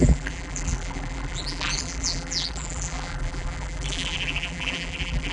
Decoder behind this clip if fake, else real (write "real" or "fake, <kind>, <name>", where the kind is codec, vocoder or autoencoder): fake, vocoder, BigVGAN v2